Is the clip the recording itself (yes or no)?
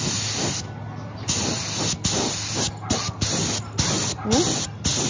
yes